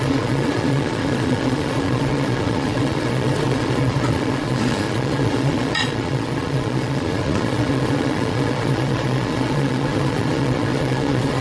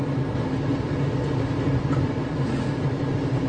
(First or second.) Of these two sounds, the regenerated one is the first